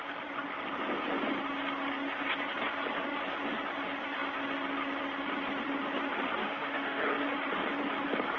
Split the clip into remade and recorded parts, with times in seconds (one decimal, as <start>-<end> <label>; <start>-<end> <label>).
0.0-6.4 recorded; 6.4-7.0 remade; 7.0-8.4 recorded